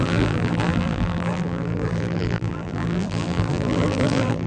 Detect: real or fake fake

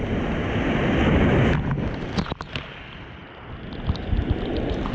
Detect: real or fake real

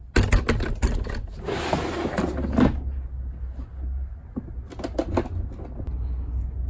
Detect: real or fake real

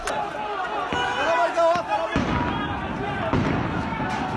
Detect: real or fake real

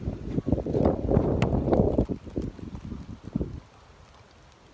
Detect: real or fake real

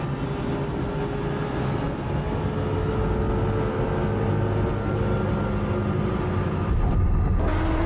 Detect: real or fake real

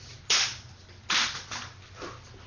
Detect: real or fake real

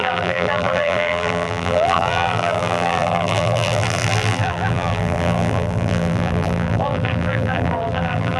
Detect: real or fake fake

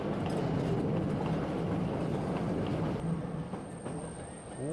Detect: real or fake real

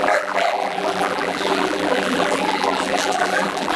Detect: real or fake fake